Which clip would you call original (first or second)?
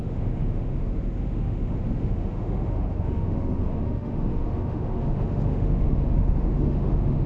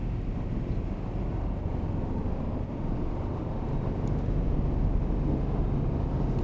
second